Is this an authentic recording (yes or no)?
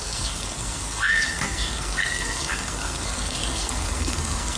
no